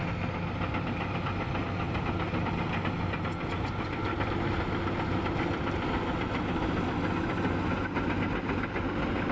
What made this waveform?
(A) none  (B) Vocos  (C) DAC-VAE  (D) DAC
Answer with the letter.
A